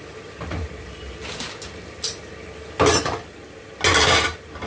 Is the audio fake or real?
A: real